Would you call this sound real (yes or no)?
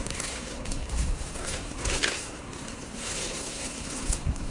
no